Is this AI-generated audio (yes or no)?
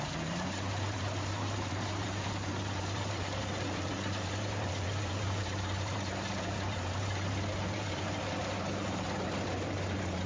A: yes